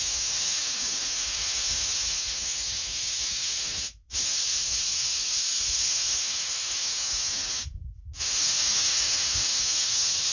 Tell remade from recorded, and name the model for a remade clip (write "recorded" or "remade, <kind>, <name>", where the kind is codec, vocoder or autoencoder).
remade, autoencoder, DAC-VAE